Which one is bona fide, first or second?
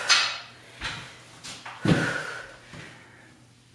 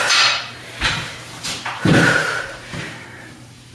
first